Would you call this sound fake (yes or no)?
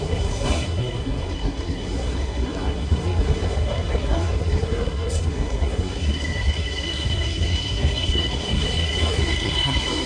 yes